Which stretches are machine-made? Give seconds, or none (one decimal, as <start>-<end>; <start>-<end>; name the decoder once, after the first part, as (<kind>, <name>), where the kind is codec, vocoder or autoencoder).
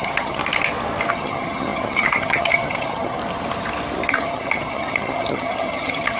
0.0-0.4 (vocoder, HiFi-GAN); 1.1-3.2; 4.1-6.2